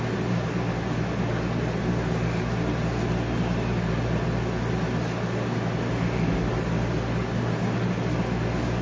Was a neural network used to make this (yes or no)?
no